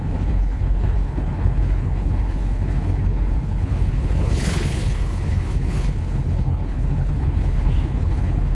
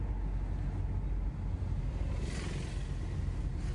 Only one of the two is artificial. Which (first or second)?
first